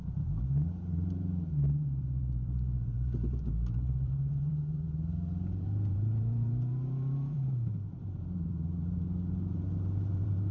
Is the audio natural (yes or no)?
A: no